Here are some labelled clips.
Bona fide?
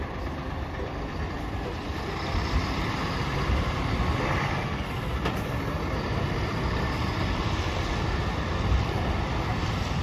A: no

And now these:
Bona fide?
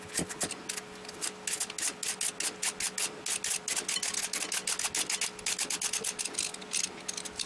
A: yes